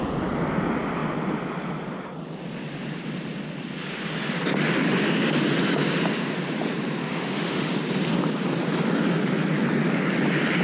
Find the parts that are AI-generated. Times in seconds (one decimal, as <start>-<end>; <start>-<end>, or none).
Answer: 7.0-7.7